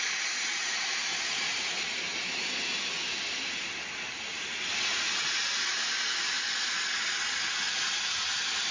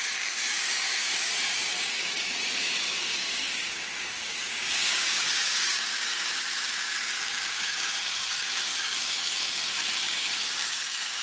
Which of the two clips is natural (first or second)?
first